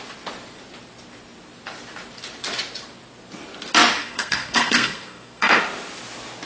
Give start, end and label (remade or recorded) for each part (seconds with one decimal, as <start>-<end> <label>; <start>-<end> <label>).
0.0-4.0 recorded; 4.0-5.6 remade; 5.6-6.5 recorded